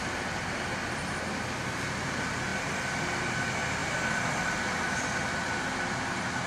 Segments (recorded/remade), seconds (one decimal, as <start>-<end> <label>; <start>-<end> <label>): 0.0-2.5 recorded; 2.5-3.0 remade; 3.0-3.8 recorded; 3.8-4.7 remade; 4.7-6.5 recorded